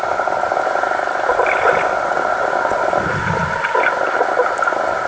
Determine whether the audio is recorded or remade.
recorded